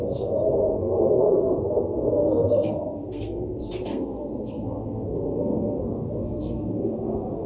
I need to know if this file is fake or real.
fake